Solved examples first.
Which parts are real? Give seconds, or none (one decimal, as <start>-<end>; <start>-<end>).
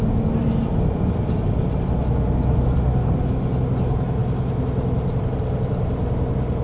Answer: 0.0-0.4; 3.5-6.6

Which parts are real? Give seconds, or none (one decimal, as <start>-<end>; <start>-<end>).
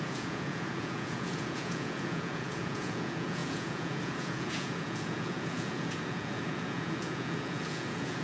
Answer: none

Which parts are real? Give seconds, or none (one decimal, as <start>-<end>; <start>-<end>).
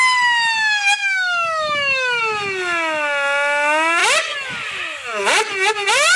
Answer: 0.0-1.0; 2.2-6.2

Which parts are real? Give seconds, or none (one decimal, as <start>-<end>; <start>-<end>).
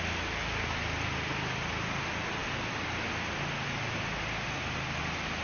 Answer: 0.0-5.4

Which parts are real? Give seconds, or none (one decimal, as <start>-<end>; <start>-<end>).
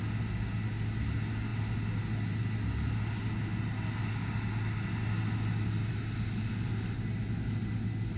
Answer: 0.0-8.2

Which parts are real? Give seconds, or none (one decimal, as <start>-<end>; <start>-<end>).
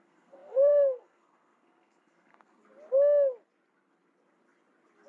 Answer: 2.6-5.1